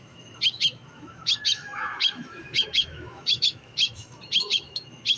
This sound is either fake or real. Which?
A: fake